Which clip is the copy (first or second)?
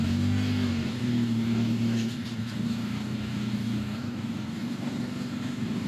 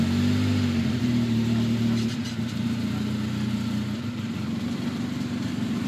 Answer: first